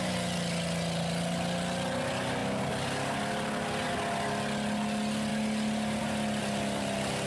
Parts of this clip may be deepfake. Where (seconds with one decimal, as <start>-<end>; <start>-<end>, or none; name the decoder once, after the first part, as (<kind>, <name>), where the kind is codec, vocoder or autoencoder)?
none